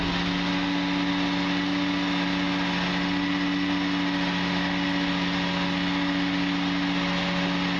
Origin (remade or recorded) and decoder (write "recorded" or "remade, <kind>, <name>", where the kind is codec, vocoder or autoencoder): recorded